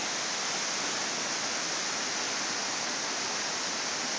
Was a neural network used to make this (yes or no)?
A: no